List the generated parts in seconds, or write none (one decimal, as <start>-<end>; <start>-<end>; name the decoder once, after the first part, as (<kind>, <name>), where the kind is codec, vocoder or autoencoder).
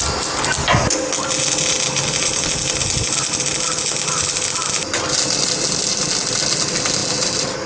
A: none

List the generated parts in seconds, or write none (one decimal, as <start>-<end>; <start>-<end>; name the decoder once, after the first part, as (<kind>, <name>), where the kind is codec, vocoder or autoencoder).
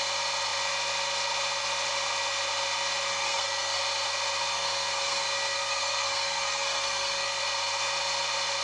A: 3.1-3.8 (codec, SNAC); 4.5-7.4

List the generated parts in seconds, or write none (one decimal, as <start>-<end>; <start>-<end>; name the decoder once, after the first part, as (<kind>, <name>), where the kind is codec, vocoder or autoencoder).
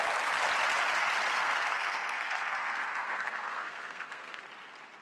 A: 1.4-4.4 (codec, SNAC)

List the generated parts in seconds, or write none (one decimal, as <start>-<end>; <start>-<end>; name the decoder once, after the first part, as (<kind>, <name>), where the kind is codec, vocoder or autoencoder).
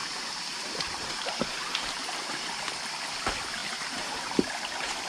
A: 0.0-2.5 (vocoder, BigVGAN v2); 3.6-5.1